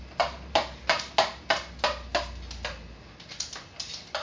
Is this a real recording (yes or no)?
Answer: yes